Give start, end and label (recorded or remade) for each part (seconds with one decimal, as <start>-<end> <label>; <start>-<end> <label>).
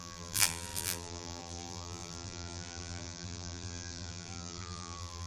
0.0-5.3 remade